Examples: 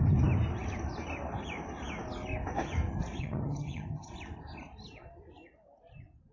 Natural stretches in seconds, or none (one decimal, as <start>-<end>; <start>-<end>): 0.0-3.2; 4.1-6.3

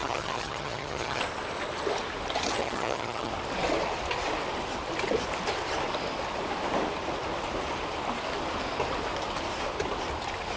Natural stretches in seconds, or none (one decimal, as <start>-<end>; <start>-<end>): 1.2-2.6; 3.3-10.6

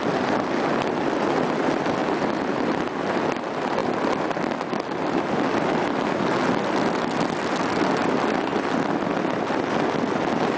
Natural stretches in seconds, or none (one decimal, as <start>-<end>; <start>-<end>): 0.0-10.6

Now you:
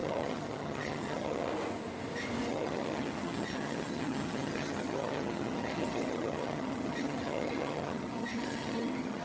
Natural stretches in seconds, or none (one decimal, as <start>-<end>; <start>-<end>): 1.5-2.5

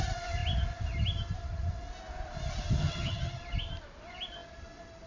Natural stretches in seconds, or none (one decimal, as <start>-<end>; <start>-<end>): 0.0-2.8; 3.4-5.1